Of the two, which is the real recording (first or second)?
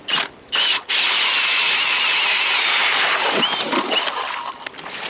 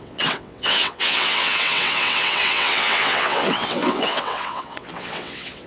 first